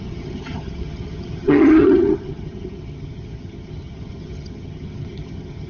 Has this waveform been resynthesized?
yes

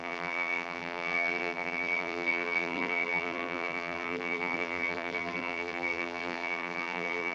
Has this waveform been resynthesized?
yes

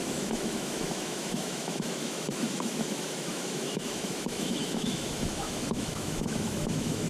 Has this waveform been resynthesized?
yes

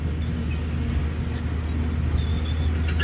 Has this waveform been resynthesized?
no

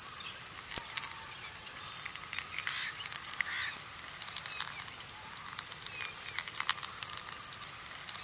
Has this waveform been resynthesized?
no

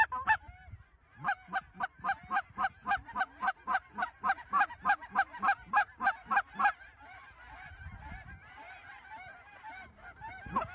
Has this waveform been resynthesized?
yes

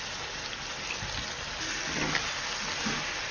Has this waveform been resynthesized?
no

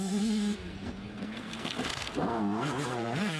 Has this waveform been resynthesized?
yes